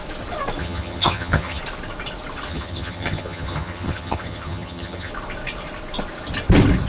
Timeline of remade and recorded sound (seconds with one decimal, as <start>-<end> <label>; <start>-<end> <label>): 0.0-0.6 recorded; 0.6-1.6 remade; 1.6-2.5 recorded; 2.5-5.1 remade; 5.1-6.9 recorded